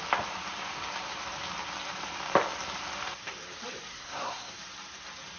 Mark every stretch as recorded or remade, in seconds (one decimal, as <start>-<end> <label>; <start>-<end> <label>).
0.0-3.9 recorded; 3.9-4.5 remade; 4.5-5.4 recorded